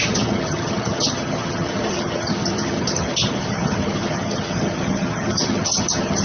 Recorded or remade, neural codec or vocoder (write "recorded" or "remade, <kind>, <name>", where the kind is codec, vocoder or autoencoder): remade, vocoder, HiFi-GAN